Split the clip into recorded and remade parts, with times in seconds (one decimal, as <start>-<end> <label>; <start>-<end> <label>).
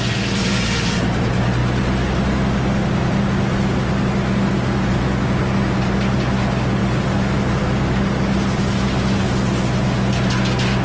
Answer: 0.0-10.8 recorded